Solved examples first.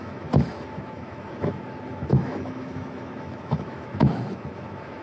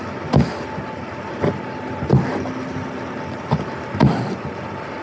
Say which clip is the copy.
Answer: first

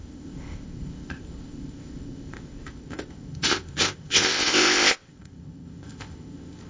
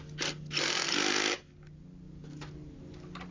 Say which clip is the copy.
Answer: first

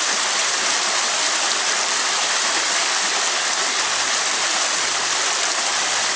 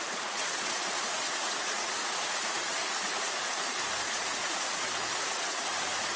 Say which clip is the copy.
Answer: second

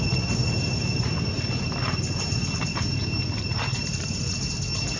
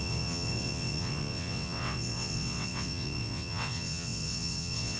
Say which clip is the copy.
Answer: second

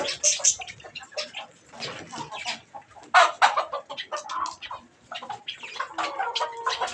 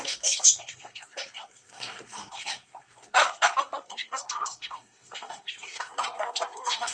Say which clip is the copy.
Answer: second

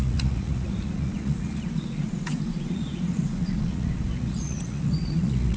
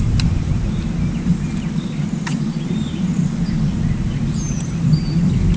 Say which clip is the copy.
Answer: first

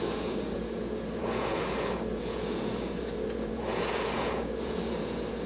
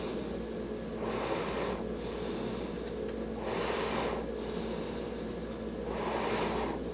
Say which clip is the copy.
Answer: first